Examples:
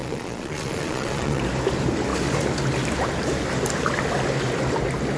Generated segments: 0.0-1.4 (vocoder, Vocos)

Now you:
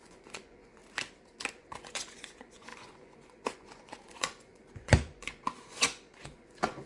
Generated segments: 0.0-0.8 (vocoder, Vocos); 1.5-6.9

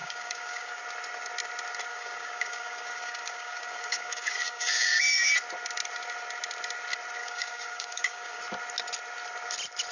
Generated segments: 0.0-0.8 (codec, DAC); 1.9-5.4; 7.2-8.4

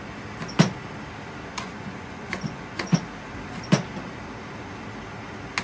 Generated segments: 1.5-3.0 (vocoder, Vocos)

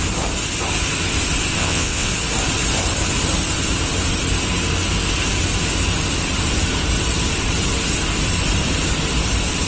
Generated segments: 1.6-2.1 (vocoder, WaveNeXt)

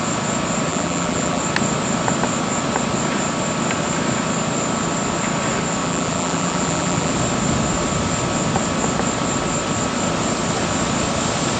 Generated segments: 0.7-1.4 (vocoder, BigVGAN v2); 5.8-7.1

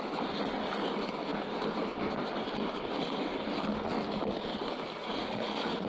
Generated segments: 5.0-5.9 (vocoder, Vocos)